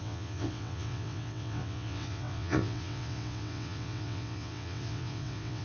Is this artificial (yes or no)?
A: yes